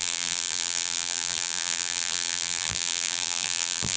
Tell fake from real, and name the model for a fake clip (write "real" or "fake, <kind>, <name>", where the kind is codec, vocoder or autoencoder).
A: fake, vocoder, BigVGAN v2